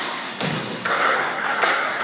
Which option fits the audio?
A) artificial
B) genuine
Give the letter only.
A